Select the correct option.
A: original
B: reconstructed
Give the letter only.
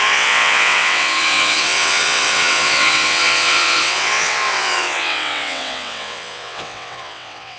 B